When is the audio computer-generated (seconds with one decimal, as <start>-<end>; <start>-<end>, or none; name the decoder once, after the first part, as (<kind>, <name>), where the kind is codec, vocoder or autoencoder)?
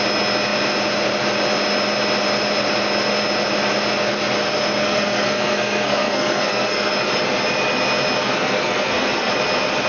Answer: 4.8-6.9 (codec, SNAC); 8.2-9.3